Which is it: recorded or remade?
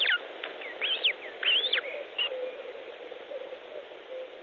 recorded